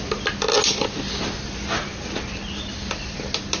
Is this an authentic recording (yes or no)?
yes